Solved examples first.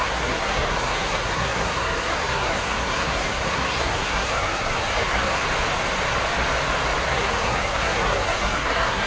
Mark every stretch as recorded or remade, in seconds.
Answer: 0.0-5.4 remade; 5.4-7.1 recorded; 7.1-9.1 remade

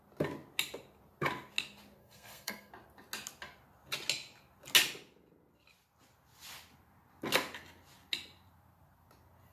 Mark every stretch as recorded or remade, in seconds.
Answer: 0.0-2.0 recorded; 2.0-2.7 remade; 2.7-9.5 recorded

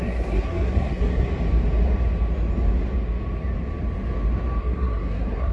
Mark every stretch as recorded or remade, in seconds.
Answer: 0.0-1.3 remade; 1.3-4.6 recorded; 4.6-5.5 remade

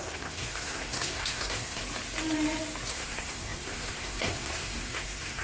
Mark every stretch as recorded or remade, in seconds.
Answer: 0.0-1.8 remade; 1.8-2.9 recorded; 2.9-5.4 remade

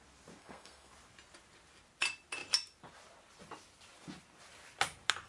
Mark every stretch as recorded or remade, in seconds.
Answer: 0.0-0.4 recorded; 0.4-0.9 remade; 0.9-5.3 recorded